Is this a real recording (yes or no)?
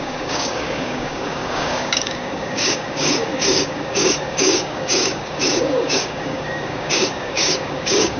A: no